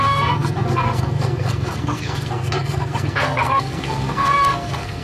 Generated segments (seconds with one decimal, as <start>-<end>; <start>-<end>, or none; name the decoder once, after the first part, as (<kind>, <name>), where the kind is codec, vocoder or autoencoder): 0.0-5.0 (codec, SNAC)

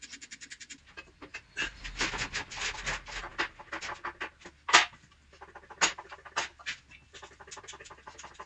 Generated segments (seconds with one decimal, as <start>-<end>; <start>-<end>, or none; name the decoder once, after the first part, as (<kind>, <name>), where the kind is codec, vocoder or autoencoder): none

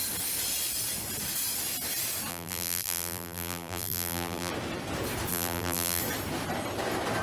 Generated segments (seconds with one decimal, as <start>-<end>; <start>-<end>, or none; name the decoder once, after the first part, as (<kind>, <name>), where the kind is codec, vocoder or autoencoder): 2.3-4.5 (vocoder, BigVGAN v2); 5.3-6.0